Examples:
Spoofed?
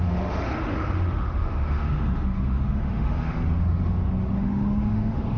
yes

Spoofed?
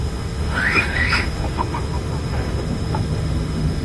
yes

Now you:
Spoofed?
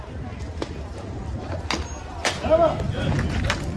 no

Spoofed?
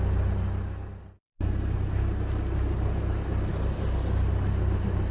no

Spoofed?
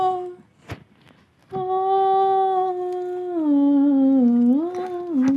no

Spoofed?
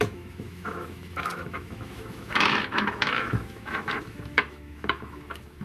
yes